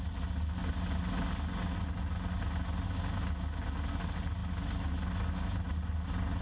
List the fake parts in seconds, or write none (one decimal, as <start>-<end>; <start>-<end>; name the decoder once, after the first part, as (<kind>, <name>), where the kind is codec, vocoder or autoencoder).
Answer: none